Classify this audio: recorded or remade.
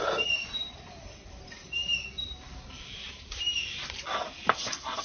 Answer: recorded